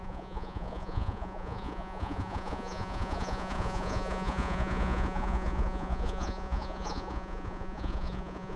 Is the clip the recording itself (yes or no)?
no